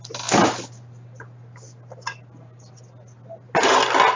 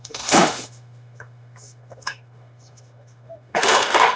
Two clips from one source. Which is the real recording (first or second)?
first